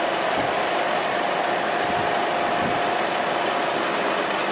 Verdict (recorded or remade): recorded